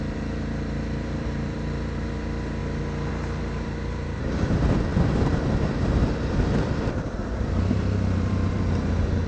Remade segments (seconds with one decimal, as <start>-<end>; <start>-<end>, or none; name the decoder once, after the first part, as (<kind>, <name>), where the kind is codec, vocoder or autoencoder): 0.0-2.6 (vocoder, BigVGAN v2); 3.1-9.3